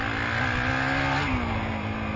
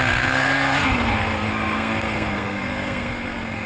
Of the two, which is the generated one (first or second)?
second